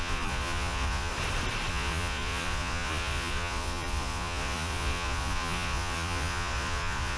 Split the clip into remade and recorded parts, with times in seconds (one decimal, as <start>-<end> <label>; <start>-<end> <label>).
0.0-1.1 remade; 1.1-1.7 recorded; 1.7-7.2 remade